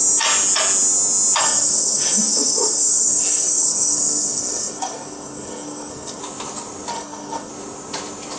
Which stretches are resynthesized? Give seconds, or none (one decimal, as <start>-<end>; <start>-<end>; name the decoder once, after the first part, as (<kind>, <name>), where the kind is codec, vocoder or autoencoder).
1.4-6.2 (codec, SNAC); 6.9-7.5